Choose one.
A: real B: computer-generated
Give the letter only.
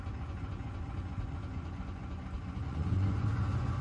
B